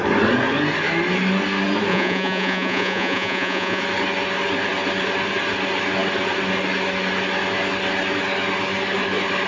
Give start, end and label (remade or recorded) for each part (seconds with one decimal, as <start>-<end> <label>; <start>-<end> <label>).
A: 0.0-1.9 recorded; 1.9-3.8 remade; 3.8-9.5 recorded